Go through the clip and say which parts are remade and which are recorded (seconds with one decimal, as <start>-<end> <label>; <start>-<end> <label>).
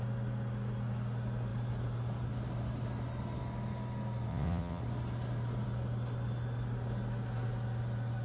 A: 0.0-4.3 recorded; 4.3-4.8 remade; 4.8-8.2 recorded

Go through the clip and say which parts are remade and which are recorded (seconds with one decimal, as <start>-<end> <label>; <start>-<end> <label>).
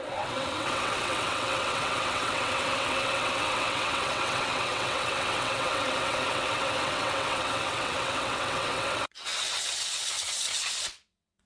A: 0.0-11.5 remade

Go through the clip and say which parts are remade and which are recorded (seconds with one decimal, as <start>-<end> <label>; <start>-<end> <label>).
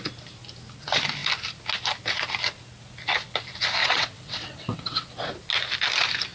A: 0.0-3.8 recorded; 3.8-5.1 remade; 5.1-6.3 recorded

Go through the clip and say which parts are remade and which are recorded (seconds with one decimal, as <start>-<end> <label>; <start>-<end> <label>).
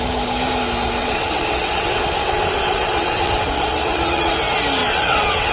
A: 0.0-1.0 recorded; 1.0-4.3 remade; 4.3-4.8 recorded; 4.8-5.5 remade